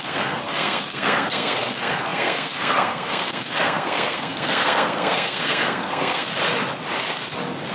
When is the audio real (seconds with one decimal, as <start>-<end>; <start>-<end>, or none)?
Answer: 6.3-7.7